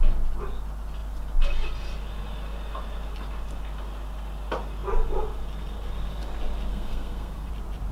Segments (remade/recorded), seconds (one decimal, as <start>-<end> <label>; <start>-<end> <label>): 0.0-6.7 recorded; 6.7-7.5 remade; 7.5-7.9 recorded